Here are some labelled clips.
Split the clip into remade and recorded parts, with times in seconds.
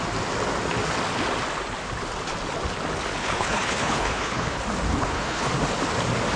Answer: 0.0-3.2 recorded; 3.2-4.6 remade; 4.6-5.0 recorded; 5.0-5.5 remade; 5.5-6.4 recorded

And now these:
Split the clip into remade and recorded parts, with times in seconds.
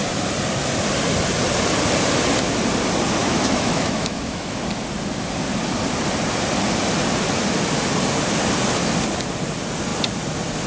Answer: 0.0-3.2 recorded; 3.2-4.6 remade; 4.6-10.7 recorded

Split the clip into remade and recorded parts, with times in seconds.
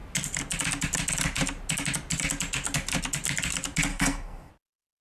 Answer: 0.0-3.9 recorded; 3.9-4.5 remade; 4.5-5.0 recorded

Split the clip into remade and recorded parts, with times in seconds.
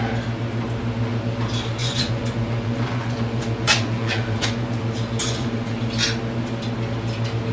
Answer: 0.0-1.8 recorded; 1.8-4.8 remade; 4.8-5.2 recorded; 5.2-5.8 remade; 5.8-7.5 recorded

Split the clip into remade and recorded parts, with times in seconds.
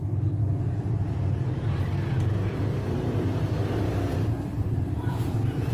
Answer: 0.0-5.7 remade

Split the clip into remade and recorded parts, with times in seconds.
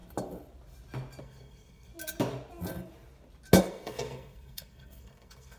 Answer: 0.0-1.2 recorded; 1.2-1.9 remade; 1.9-3.6 recorded; 3.6-5.6 remade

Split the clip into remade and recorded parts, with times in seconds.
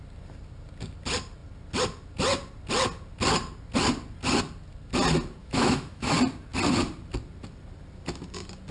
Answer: 0.0-5.4 recorded; 5.4-6.1 remade; 6.1-8.7 recorded